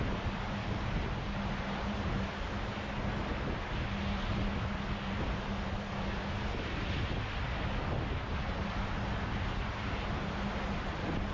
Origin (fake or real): real